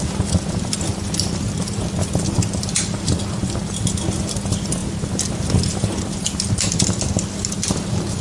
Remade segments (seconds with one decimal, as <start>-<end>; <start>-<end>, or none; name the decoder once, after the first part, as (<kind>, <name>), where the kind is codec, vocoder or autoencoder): none